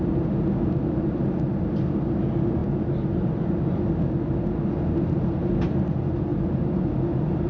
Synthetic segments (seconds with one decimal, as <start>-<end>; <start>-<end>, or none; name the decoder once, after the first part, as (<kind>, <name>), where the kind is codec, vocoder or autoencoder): none